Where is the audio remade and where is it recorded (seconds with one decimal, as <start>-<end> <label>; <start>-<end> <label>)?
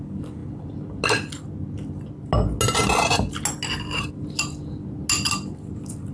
0.0-6.1 recorded